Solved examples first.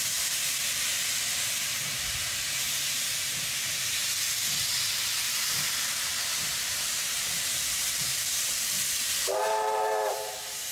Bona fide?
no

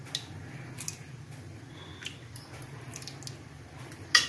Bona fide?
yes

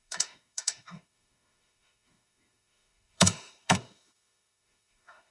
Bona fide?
no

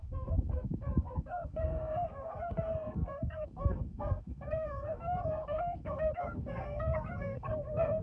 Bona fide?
no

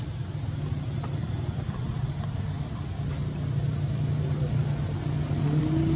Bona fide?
yes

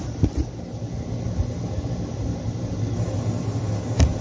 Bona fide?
yes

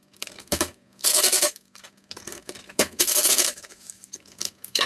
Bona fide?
no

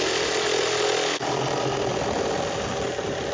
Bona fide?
yes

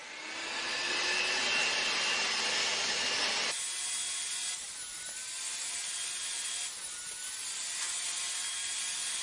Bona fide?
yes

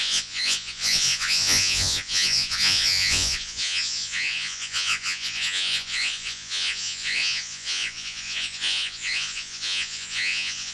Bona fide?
no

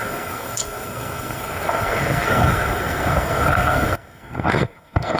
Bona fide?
no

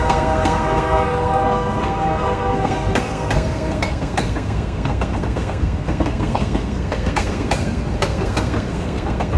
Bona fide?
no